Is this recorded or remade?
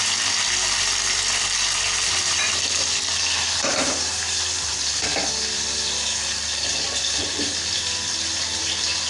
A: remade